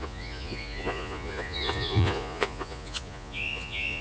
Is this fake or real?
fake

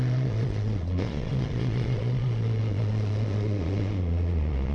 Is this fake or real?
fake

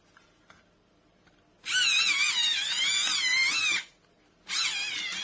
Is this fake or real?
real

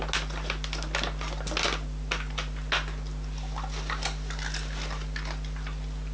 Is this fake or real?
real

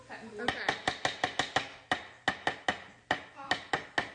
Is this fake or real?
real